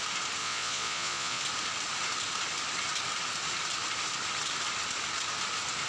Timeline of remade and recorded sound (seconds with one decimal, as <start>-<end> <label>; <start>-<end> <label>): 0.0-0.4 recorded; 0.4-1.4 remade; 1.4-5.9 recorded